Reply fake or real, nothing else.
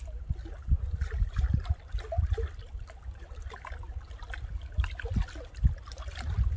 real